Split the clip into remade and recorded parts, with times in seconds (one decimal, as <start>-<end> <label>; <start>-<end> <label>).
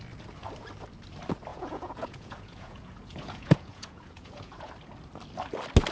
0.0-1.5 recorded; 1.5-4.7 remade; 4.7-5.9 recorded